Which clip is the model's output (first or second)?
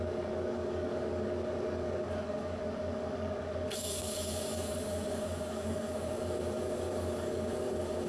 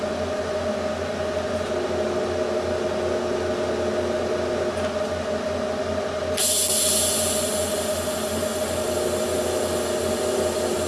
first